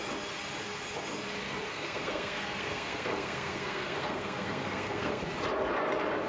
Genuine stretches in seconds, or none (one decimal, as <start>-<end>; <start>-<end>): 0.0-1.7; 5.2-6.3